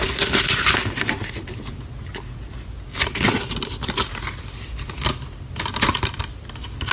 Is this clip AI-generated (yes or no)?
no